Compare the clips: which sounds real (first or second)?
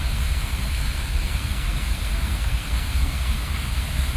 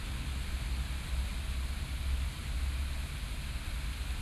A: second